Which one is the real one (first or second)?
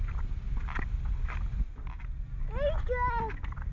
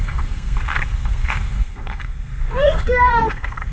first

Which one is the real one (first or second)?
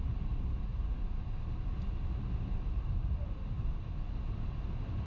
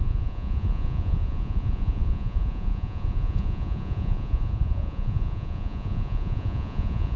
first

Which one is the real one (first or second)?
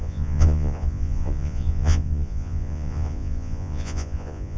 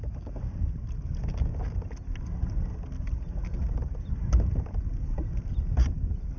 second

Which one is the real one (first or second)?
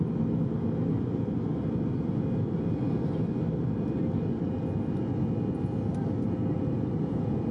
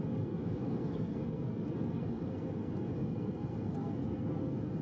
first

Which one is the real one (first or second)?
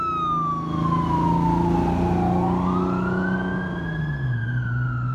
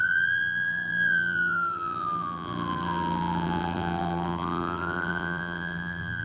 first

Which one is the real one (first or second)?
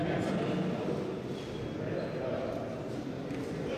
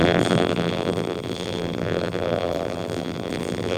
first